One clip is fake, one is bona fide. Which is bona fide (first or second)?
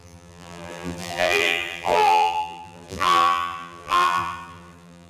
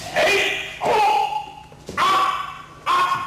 second